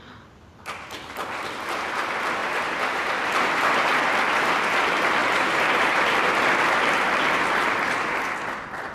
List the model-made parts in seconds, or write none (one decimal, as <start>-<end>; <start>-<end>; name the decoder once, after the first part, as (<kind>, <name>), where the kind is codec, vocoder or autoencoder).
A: 2.4-3.1 (vocoder, BigVGAN v2); 5.2-6.3